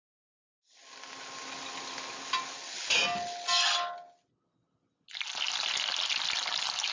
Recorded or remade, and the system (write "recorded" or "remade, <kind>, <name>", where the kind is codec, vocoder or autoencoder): recorded